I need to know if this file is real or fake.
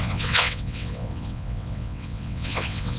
fake